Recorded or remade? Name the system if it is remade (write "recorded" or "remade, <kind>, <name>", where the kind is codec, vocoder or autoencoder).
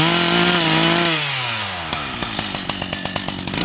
recorded